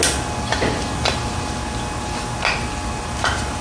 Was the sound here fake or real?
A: real